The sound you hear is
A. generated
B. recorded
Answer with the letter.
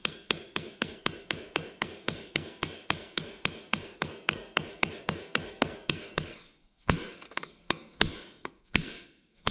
A